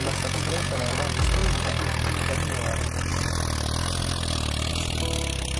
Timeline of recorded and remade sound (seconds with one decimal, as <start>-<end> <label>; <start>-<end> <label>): 0.0-0.7 remade; 0.7-5.6 recorded